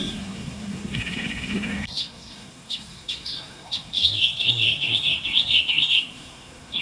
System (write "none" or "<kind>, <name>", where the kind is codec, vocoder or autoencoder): codec, SNAC